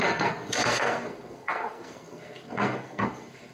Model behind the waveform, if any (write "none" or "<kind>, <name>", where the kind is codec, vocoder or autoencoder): codec, SNAC